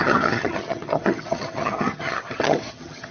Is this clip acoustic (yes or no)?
no